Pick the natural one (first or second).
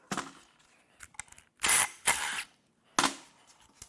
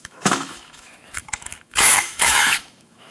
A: first